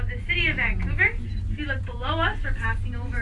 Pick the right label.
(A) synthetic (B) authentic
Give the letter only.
B